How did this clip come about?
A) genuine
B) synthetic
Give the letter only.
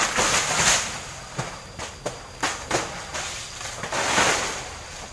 A